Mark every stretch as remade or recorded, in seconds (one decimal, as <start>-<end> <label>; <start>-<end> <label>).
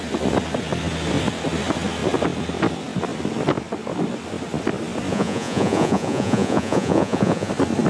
0.0-5.1 recorded; 5.1-7.5 remade; 7.5-7.9 recorded